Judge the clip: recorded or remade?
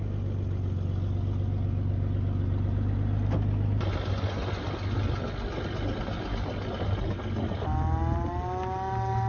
recorded